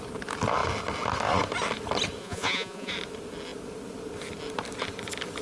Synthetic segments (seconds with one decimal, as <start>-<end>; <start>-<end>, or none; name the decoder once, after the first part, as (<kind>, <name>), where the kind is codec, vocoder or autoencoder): 2.2-2.9 (vocoder, Vocos)